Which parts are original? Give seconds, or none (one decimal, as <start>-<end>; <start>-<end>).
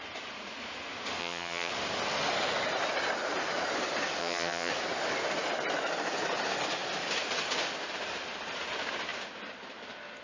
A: 0.0-1.2; 1.7-4.2; 4.7-10.2